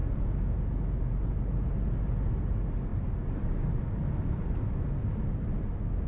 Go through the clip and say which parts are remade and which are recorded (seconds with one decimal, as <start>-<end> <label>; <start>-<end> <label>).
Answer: 0.0-6.1 recorded